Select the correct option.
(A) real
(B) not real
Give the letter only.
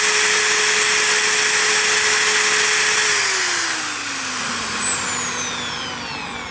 A